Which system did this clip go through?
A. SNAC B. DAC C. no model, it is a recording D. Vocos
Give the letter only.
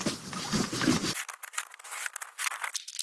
C